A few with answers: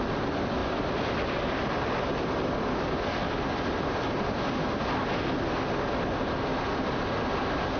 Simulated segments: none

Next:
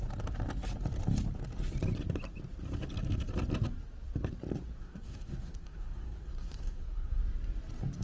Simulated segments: 4.8-7.2 (codec, SNAC)

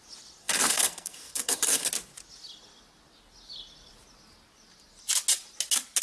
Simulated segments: 0.4-1.9 (codec, SNAC)

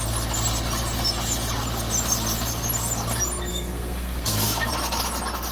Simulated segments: 3.5-4.7 (codec, SNAC)

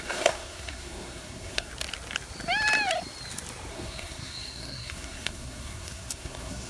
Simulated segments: 0.0-1.7 (codec, SNAC); 3.7-6.7

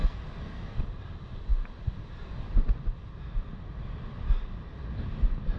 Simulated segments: 0.0-0.8 (codec, SNAC)